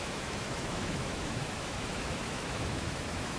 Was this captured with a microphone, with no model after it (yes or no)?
no